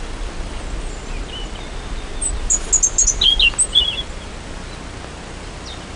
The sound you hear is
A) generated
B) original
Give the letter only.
B